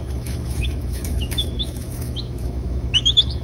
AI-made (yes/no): yes